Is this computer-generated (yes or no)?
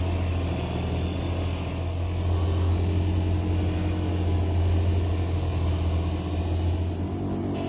no